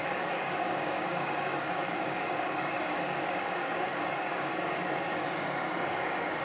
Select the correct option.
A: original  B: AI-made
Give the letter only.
B